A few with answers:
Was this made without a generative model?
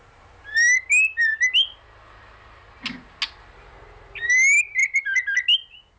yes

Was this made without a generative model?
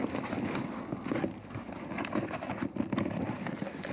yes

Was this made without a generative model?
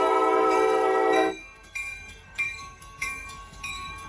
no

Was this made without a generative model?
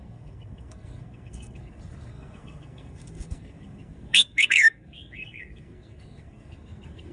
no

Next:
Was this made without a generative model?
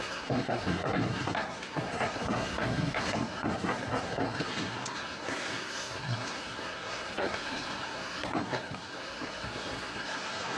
no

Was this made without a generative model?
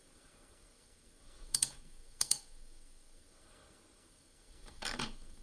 no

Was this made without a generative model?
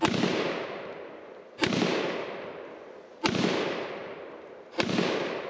yes